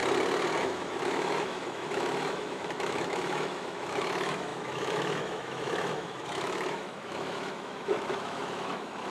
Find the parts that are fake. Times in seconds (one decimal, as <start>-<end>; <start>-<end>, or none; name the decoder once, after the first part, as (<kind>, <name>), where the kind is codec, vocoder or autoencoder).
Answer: 0.6-9.1 (autoencoder, DAC-VAE)